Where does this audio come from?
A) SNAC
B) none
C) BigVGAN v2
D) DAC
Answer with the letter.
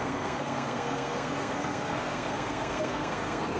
A